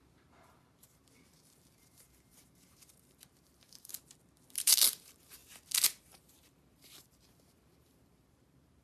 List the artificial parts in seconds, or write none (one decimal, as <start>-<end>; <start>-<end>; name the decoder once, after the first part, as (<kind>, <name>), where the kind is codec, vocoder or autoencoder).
0.0-3.9 (vocoder, BigVGAN v2); 4.6-5.4; 6.0-8.8